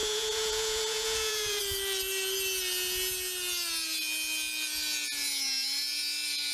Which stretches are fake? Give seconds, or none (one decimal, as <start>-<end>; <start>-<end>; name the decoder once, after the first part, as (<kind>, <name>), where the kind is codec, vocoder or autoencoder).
0.0-1.6 (vocoder, Vocos)